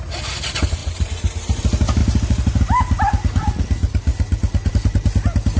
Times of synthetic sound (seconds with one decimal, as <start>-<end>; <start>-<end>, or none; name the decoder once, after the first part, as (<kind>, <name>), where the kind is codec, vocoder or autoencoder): 0.8-1.6 (vocoder, BigVGAN v2); 2.0-2.6